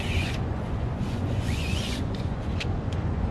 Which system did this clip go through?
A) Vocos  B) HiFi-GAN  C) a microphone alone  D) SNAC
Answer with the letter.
A